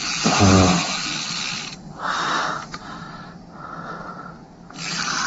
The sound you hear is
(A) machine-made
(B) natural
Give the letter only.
B